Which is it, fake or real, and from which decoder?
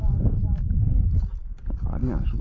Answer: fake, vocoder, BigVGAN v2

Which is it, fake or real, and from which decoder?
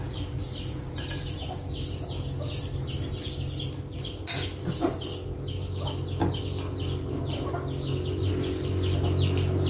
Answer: real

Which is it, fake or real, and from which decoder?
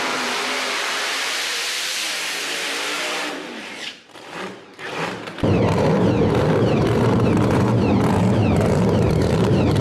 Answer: fake, vocoder, BigVGAN v2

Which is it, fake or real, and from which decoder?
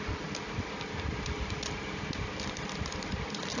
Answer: real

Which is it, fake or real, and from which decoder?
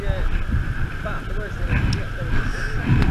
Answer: real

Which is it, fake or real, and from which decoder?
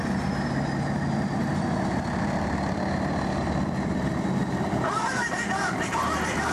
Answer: real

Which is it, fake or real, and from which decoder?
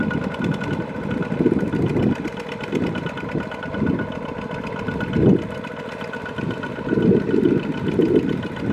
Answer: real